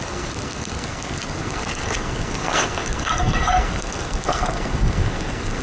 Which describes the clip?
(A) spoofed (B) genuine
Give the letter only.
A